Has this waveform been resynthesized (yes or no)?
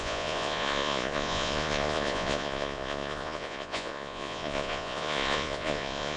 yes